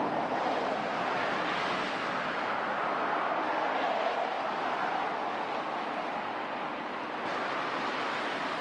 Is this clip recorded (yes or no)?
yes